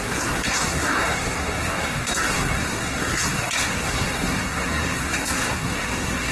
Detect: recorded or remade remade